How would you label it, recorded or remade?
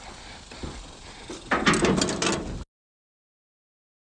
recorded